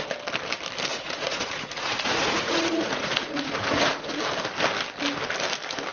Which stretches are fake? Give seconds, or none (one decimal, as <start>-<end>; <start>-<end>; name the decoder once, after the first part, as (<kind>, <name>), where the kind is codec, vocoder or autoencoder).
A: 0.9-4.2 (vocoder, Vocos)